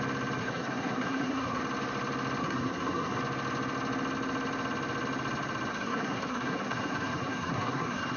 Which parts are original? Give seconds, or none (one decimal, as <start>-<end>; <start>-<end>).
0.0-0.4; 1.6-2.4; 3.2-5.7